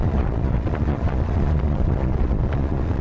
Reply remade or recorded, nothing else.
remade